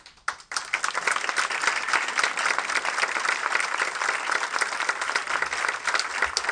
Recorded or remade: recorded